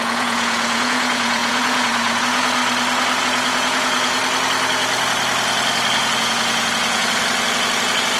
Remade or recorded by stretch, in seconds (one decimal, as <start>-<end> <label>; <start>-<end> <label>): 0.0-2.6 remade; 2.6-3.2 recorded; 3.2-4.2 remade; 4.2-6.0 recorded; 6.0-7.0 remade; 7.0-8.2 recorded